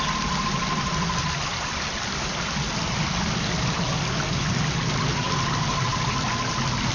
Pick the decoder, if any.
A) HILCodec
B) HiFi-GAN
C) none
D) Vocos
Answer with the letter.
C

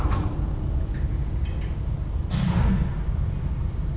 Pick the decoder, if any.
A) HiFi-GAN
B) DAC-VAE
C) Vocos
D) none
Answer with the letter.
D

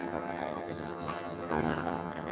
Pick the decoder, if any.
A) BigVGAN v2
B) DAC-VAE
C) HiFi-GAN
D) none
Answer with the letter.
C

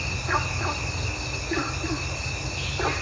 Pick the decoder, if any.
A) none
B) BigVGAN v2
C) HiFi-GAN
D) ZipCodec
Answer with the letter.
A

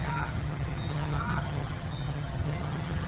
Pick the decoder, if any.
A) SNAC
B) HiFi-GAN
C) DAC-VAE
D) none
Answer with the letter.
B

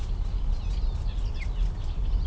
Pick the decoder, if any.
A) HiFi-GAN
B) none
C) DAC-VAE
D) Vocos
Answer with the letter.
B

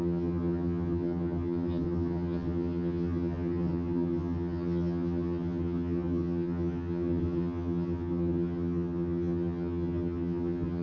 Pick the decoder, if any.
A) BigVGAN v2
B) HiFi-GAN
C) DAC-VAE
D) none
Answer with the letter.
B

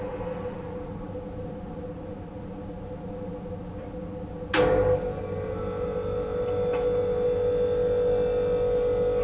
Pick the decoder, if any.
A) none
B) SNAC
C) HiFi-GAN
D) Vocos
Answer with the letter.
A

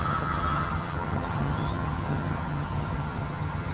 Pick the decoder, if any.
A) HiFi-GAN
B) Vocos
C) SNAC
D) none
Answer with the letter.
A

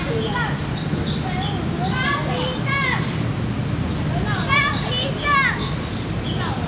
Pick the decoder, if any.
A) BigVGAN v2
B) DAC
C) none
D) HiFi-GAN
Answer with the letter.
C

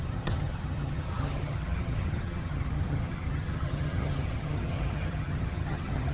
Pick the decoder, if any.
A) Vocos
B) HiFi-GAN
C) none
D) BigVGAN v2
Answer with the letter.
B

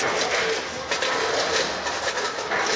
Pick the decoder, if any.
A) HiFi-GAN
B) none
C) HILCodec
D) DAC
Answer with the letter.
B